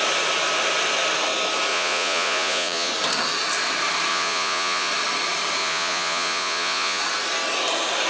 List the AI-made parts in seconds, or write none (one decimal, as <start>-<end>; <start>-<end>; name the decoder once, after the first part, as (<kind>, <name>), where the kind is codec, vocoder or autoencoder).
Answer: 1.7-2.9 (vocoder, Vocos); 4.1-4.9; 5.6-7.0